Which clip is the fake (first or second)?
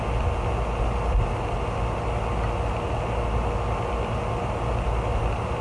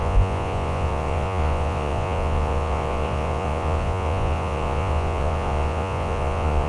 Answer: second